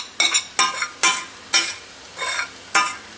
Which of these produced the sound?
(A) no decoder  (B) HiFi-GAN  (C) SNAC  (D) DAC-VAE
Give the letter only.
A